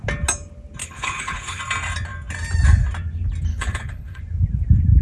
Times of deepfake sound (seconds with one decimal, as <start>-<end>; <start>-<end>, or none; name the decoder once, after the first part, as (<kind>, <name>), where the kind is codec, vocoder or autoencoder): 0.8-1.6 (codec, HILCodec); 3.5-4.2